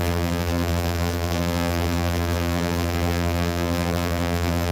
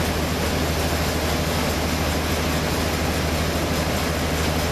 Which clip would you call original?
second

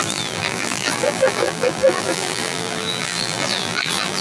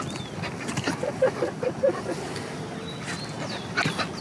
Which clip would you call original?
second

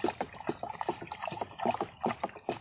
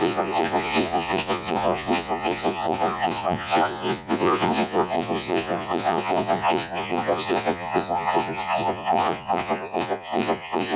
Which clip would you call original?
first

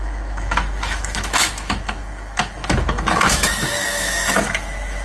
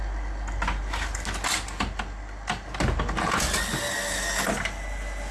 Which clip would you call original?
second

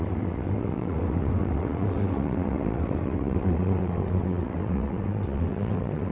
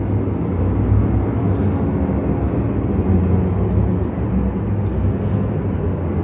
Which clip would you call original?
second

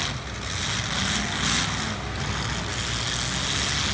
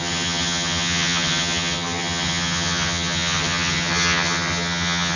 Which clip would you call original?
first